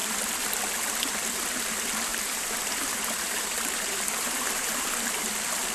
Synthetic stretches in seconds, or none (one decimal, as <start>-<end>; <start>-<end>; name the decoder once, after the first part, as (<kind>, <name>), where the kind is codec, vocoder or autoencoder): 2.1-5.2 (vocoder, BigVGAN v2)